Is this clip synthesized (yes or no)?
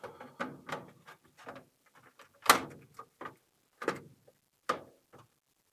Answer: no